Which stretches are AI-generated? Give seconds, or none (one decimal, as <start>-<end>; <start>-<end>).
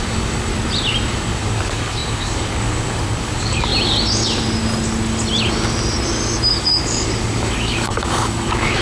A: 0.0-0.5; 1.1-3.7; 6.5-8.8